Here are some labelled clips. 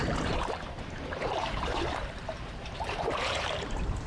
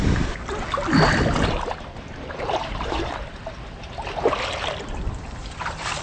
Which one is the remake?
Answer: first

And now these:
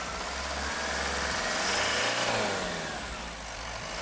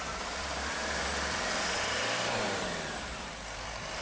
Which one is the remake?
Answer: second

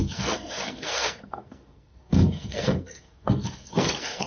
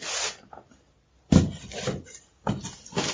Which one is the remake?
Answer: first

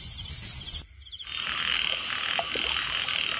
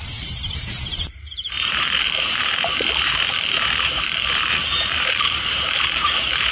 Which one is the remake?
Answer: second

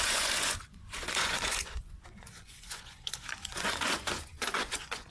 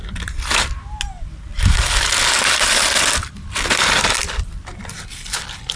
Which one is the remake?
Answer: first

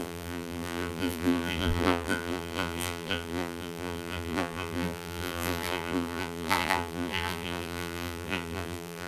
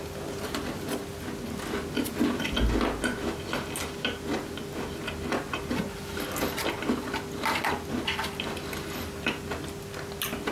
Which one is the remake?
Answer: first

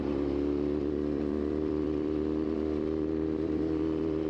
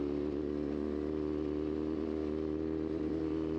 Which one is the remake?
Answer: first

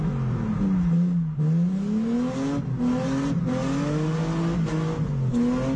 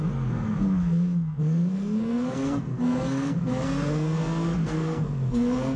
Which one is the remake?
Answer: second